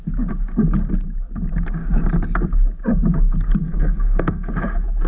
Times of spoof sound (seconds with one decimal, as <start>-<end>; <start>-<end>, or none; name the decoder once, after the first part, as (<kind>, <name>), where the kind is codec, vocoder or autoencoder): 3.6-4.5 (codec, SNAC)